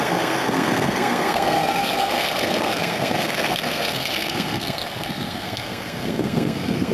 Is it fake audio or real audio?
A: fake